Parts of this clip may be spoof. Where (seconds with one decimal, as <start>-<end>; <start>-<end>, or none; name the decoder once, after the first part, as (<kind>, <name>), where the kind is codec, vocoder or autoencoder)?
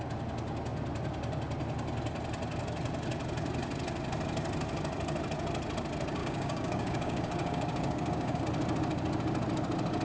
6.2-8.4 (codec, DAC)